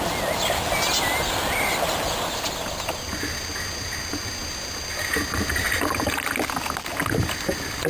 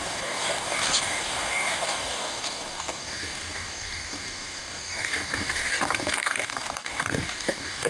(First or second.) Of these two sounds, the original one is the first